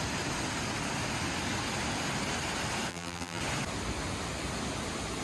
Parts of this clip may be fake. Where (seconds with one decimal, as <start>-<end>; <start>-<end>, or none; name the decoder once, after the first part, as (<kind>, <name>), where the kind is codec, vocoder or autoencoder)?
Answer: 2.9-3.4 (vocoder, BigVGAN v2)